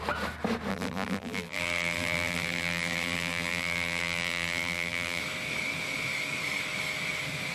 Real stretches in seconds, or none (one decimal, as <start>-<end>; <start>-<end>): 0.0-0.7; 5.2-7.5